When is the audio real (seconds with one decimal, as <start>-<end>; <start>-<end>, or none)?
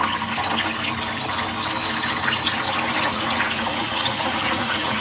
0.0-3.0